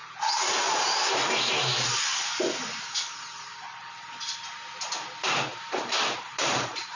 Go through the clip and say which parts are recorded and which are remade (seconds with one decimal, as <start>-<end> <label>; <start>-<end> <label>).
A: 0.0-5.5 recorded; 5.5-7.0 remade